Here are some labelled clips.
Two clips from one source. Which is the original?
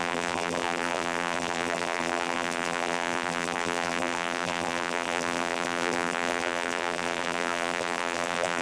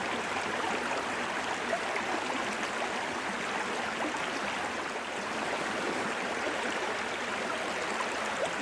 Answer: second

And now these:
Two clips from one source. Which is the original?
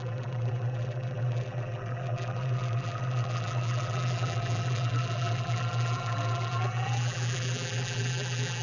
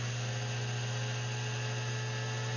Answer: second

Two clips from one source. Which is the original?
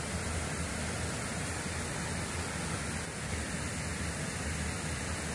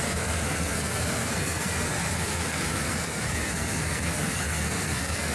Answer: first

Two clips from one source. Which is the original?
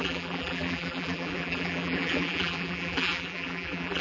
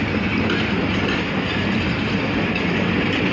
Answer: second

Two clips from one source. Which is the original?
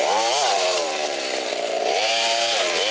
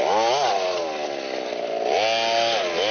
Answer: second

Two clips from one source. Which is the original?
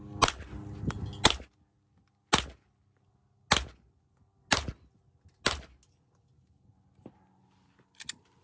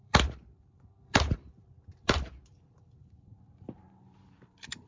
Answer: first